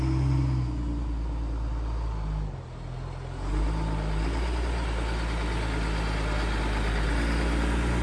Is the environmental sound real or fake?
real